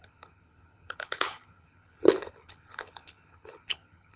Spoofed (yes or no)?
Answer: yes